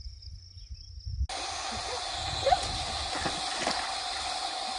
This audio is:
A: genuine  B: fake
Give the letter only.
A